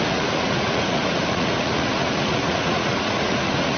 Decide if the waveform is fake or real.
fake